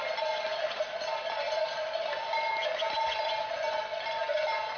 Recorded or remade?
recorded